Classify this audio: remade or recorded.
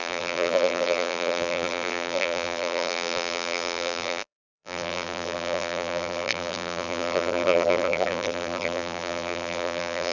remade